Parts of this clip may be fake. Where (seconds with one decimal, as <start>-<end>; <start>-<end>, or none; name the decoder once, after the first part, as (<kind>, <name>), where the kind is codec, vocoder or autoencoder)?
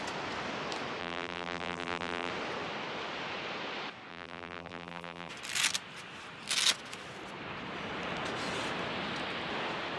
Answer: 1.0-2.3 (vocoder, BigVGAN v2); 4.1-5.3